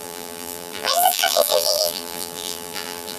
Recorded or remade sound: remade